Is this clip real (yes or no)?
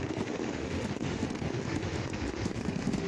no